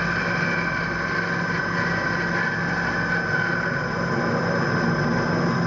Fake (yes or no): no